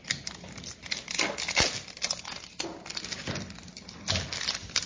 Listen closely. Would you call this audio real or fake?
real